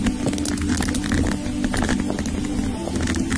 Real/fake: real